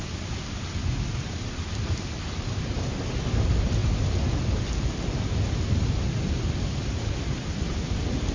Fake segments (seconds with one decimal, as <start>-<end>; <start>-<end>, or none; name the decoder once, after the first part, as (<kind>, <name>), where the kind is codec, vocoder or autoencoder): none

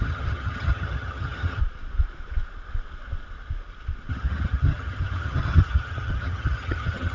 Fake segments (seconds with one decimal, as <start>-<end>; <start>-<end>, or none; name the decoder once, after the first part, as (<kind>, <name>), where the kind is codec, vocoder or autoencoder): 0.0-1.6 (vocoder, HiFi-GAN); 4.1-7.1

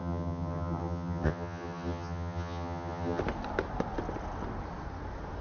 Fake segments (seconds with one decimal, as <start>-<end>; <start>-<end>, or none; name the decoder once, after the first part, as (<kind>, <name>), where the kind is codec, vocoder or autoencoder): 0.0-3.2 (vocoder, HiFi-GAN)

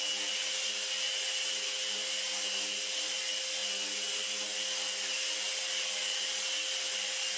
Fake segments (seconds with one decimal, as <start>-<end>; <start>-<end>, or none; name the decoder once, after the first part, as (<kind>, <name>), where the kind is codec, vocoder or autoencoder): none

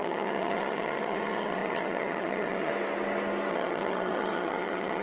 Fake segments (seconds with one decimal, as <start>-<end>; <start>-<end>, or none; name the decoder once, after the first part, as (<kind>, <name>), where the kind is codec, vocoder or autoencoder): 0.0-2.7 (vocoder, HiFi-GAN); 3.5-5.0